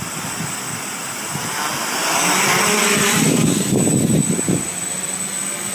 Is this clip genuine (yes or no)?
yes